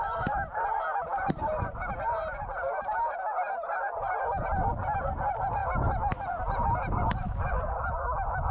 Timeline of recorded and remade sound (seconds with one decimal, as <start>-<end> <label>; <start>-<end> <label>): 0.0-8.5 recorded

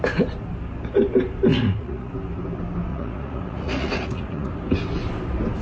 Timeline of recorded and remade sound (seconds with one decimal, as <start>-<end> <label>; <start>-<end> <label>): 0.0-1.5 recorded; 1.5-2.1 remade; 2.1-2.9 recorded; 2.9-4.5 remade; 4.5-5.6 recorded

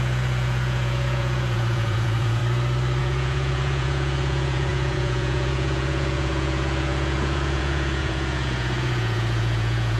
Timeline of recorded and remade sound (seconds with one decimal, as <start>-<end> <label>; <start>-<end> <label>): 0.0-2.4 remade; 2.4-3.0 recorded; 3.0-10.0 remade

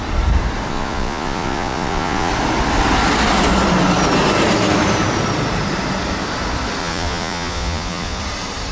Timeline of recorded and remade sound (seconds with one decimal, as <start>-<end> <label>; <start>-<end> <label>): 0.0-0.7 recorded; 0.7-2.3 remade; 2.3-6.8 recorded; 6.8-8.2 remade; 8.2-8.7 recorded

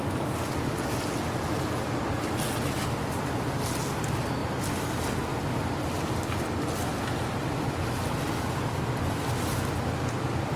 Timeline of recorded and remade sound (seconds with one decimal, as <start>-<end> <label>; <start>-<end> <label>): 0.0-10.6 recorded

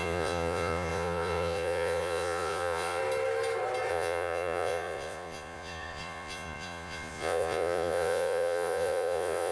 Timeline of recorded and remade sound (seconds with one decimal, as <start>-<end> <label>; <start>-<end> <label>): 0.0-3.0 remade; 3.0-3.9 recorded; 3.9-9.5 remade